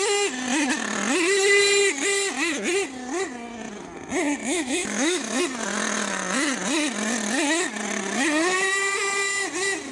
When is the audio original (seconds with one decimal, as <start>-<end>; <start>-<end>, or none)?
0.0-4.4; 5.4-9.9